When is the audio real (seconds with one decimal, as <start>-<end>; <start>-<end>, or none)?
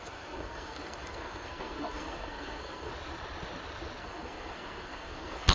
2.9-4.0